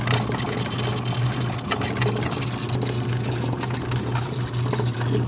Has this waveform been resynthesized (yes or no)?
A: no